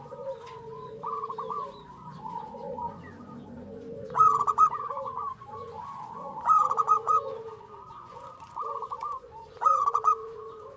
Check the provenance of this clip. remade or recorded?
remade